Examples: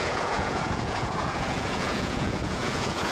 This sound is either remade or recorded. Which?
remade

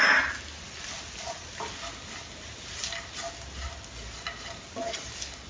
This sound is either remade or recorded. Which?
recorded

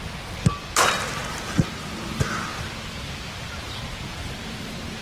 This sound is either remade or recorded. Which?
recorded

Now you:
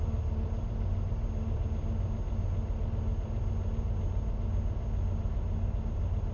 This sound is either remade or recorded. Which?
recorded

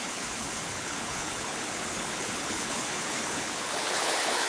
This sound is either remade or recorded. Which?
remade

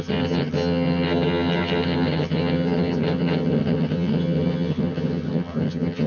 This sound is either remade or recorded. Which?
remade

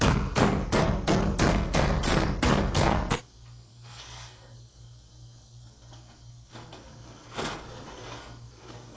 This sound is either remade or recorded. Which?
remade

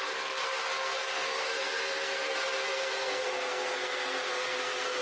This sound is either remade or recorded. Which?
remade